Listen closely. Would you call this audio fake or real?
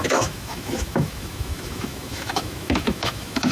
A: fake